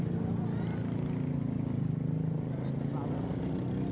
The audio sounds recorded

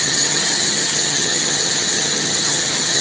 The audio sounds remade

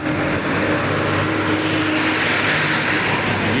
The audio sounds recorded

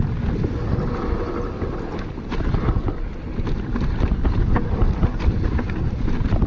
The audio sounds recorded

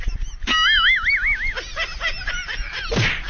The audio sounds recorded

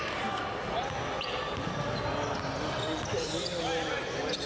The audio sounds recorded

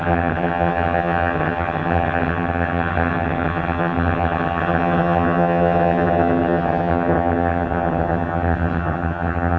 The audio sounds remade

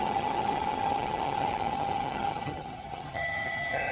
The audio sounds remade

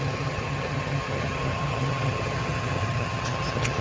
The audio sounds remade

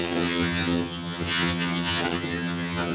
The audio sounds remade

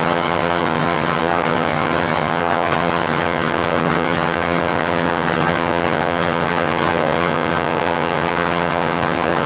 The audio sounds remade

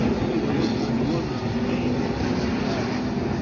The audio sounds recorded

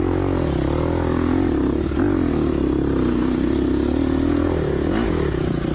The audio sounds recorded